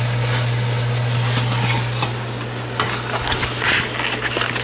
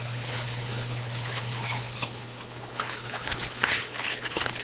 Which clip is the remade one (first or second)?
second